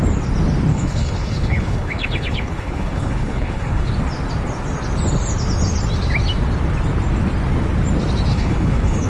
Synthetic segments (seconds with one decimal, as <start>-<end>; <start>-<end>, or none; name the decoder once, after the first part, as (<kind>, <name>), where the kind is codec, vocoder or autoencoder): 0.7-3.9 (codec, HILCodec); 8.3-9.1